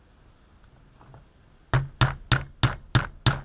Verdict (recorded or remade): recorded